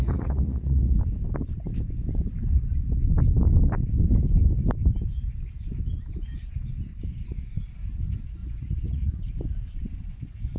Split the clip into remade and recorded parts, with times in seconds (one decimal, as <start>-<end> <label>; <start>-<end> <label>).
0.0-1.0 remade; 1.0-8.4 recorded; 8.4-9.3 remade; 9.3-10.6 recorded